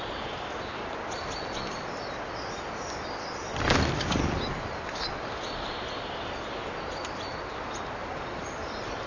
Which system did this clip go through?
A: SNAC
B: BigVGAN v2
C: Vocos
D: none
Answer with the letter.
B